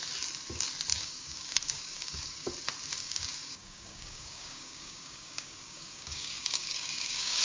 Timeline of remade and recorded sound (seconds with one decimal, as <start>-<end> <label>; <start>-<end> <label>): 0.0-0.9 recorded; 0.9-2.5 remade; 2.5-3.0 recorded; 3.0-7.4 remade